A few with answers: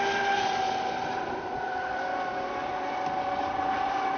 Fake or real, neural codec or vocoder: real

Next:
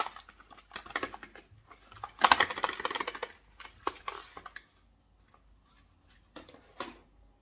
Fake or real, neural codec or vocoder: real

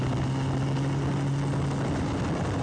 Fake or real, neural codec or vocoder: real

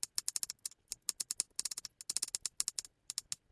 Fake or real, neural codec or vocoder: real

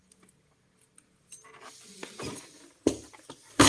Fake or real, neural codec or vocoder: real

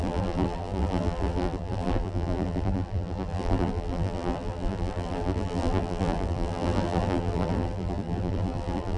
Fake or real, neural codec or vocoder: fake, vocoder, BigVGAN v2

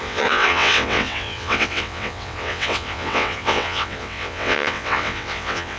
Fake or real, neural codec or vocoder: fake, vocoder, WaveNeXt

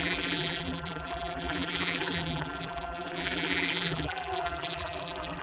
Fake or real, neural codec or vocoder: fake, vocoder, BigVGAN v2